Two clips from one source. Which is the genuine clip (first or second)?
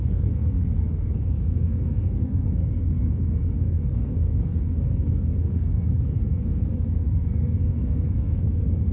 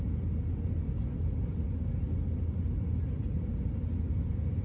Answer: second